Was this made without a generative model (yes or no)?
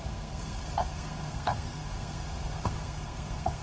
no